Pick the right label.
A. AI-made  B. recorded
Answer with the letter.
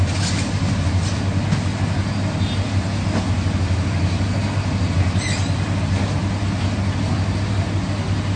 B